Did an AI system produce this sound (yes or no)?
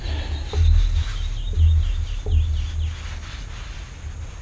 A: no